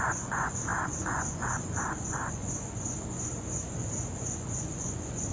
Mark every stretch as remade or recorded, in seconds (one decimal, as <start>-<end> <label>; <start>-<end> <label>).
0.0-5.3 remade